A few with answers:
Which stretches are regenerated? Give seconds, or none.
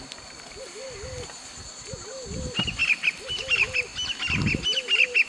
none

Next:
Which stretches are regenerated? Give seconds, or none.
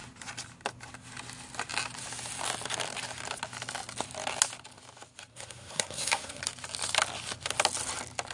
5.3-6.4 (codec, SNAC)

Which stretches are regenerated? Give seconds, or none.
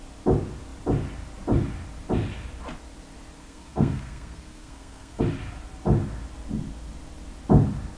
3.4-5.2 (codec, SNAC)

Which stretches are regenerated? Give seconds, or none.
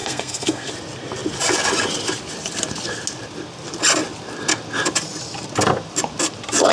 0.0-0.7 (codec, SNAC)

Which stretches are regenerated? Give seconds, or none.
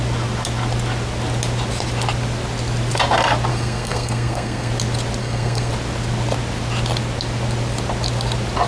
3.5-4.7 (codec, SNAC); 5.2-5.7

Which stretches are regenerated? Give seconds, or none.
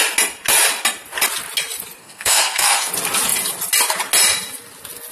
2.0-2.9 (codec, SNAC)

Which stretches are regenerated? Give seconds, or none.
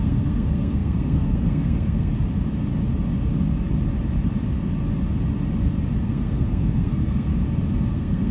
0.0-2.1 (codec, SNAC); 6.0-7.3; 7.9-8.3